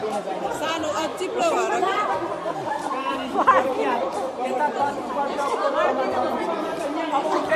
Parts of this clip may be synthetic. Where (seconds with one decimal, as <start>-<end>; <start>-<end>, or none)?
0.0-7.6